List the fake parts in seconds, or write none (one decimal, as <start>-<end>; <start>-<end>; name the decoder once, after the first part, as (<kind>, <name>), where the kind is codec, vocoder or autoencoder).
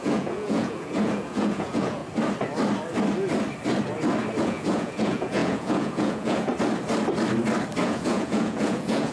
0.0-2.0 (vocoder, Vocos); 4.4-6.5; 7.8-9.1